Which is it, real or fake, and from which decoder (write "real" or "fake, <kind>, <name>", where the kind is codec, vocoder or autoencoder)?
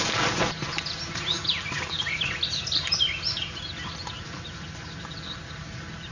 real